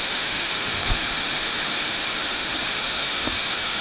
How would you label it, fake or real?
fake